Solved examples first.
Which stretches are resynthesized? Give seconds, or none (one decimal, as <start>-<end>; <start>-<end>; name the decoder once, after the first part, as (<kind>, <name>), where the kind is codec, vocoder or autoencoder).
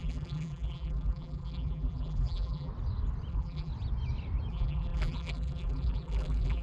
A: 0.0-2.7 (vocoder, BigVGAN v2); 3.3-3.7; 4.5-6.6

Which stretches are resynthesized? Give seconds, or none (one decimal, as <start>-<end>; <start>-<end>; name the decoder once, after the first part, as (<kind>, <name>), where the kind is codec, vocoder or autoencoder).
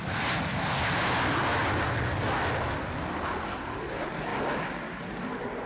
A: none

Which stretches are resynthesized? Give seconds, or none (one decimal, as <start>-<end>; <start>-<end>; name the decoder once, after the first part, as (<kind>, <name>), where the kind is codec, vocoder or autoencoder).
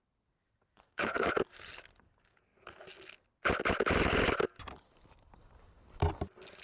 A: 0.8-1.3 (codec, SNAC)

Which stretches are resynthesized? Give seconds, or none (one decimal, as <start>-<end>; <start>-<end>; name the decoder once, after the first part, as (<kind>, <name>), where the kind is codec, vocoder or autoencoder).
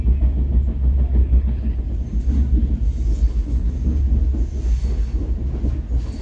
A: 1.2-1.8 (codec, HILCodec); 3.1-3.7